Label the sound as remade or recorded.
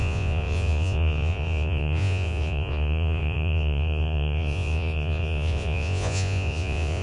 remade